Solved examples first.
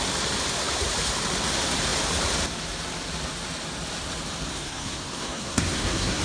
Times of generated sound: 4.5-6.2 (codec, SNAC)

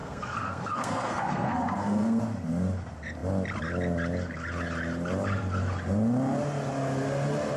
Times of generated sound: 0.0-2.2 (codec, SNAC)

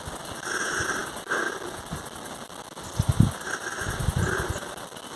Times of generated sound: none

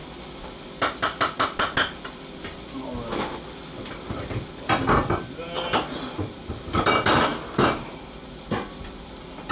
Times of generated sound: none